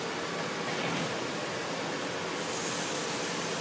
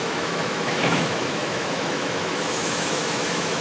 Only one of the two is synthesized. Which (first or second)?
second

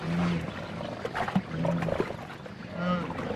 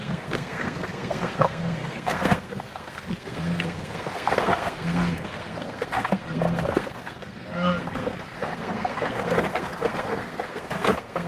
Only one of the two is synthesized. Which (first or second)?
second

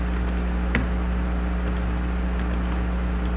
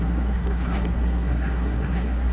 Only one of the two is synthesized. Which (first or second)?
second